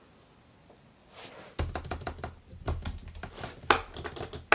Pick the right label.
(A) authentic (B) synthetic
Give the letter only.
A